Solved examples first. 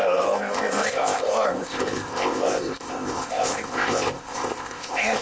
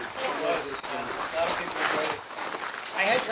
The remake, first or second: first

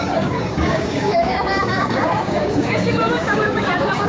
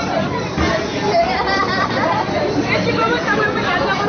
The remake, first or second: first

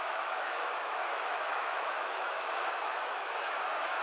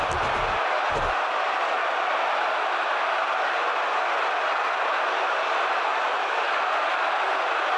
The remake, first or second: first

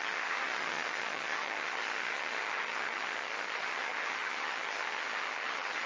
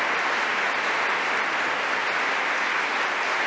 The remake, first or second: first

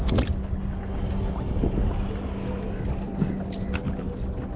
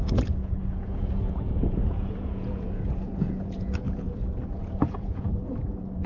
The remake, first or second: second